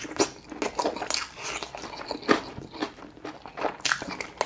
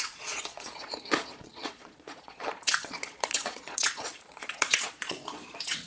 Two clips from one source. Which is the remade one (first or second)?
second